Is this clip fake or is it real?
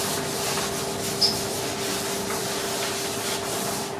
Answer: real